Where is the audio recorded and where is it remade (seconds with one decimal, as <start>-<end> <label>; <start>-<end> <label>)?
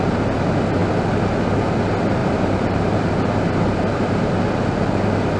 0.0-2.2 recorded; 2.2-4.3 remade; 4.3-5.4 recorded